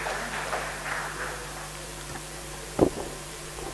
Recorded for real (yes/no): no